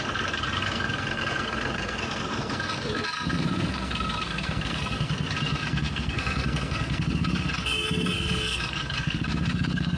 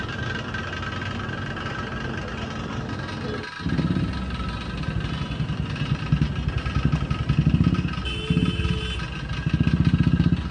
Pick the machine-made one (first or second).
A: first